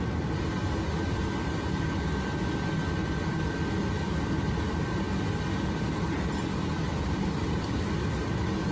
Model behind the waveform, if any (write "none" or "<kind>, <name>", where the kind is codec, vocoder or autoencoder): none